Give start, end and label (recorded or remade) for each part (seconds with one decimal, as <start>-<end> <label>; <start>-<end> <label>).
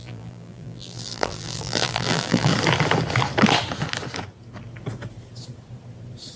0.0-2.5 remade; 2.5-6.4 recorded